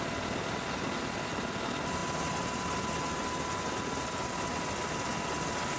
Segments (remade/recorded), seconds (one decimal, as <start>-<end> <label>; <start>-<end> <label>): 0.0-5.8 recorded